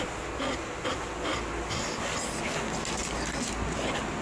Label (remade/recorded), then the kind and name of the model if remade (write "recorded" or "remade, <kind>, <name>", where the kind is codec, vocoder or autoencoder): recorded